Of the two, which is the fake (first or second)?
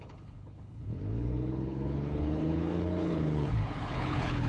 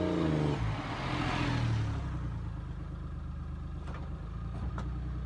first